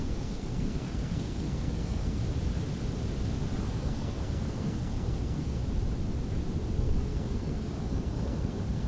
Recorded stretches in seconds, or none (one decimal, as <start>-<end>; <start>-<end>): 2.2-3.6; 5.6-6.8